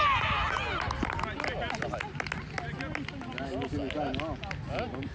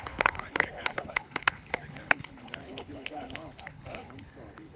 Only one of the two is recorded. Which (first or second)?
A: first